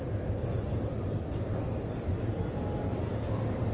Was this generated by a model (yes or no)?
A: no